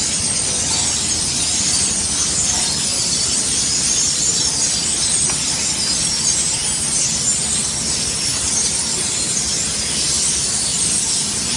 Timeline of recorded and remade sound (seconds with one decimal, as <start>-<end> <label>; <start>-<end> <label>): 0.0-2.9 recorded; 2.9-4.2 remade; 4.2-11.6 recorded